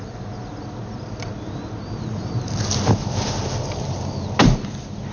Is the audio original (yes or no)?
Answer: yes